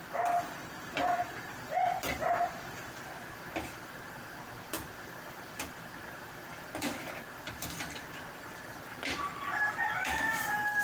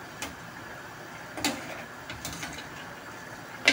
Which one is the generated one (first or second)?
first